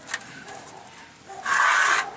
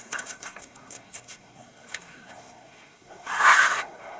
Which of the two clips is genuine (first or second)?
first